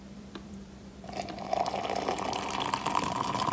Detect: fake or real fake